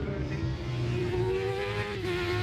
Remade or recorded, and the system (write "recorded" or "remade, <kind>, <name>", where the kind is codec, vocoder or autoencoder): remade, vocoder, BigVGAN v2